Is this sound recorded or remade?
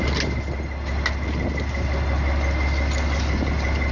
recorded